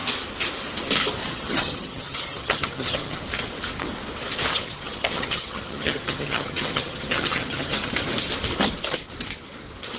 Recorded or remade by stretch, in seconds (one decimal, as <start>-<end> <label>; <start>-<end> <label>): 0.0-1.2 recorded; 1.2-3.2 remade; 3.2-4.5 recorded; 4.5-7.9 remade; 7.9-10.0 recorded